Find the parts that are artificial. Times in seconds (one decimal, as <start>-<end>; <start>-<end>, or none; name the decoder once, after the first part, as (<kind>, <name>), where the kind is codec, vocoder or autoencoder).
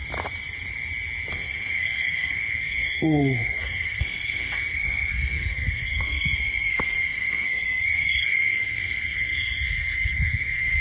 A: 1.3-10.8 (codec, SNAC)